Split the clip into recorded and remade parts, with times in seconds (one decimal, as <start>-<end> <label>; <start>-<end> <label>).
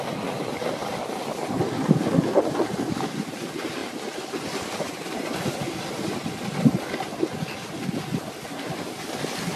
0.0-0.8 recorded; 0.8-1.5 remade; 1.5-3.8 recorded; 3.8-5.7 remade; 5.7-9.6 recorded